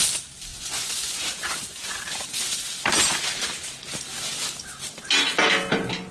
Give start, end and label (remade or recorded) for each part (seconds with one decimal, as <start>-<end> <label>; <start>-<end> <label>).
0.0-0.5 recorded; 0.5-2.0 remade; 2.0-6.1 recorded